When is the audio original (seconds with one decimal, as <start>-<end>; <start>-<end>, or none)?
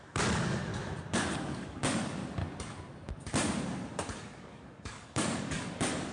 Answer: 0.7-1.6; 2.4-4.2